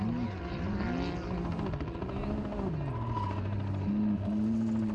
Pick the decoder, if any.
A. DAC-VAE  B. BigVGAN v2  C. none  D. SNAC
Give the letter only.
C